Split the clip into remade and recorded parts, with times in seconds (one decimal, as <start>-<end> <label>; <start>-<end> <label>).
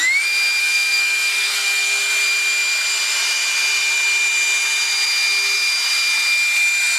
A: 0.0-0.6 recorded; 0.6-2.0 remade; 2.0-7.0 recorded